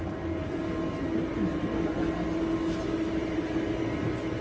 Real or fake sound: real